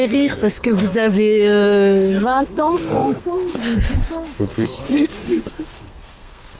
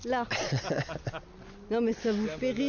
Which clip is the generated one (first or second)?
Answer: first